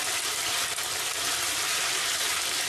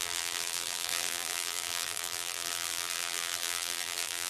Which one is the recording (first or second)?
first